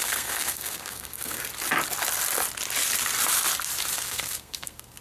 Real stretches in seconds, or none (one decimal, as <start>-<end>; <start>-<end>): 1.4-3.9